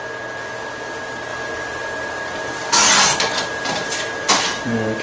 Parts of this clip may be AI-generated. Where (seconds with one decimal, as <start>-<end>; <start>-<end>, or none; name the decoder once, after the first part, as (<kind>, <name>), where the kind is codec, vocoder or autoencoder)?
none